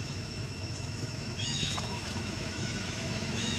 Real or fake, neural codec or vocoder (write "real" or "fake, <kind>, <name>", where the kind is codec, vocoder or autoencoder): fake, autoencoder, DAC-VAE